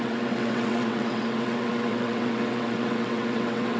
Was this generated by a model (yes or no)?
yes